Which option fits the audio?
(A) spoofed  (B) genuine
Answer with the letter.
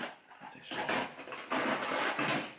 B